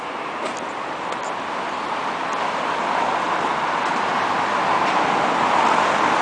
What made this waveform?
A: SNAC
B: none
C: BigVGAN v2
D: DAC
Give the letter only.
B